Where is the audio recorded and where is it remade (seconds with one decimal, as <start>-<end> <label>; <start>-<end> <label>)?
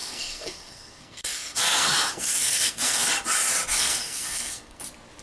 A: 0.0-3.1 remade; 3.1-3.7 recorded; 3.7-4.8 remade; 4.8-5.2 recorded